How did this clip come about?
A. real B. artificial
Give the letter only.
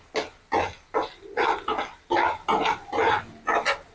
A